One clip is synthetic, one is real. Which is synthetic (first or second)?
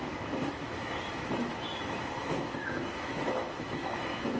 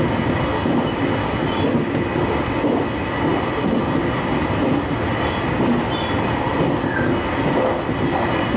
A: first